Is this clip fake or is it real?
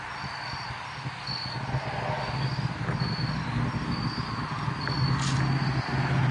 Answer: real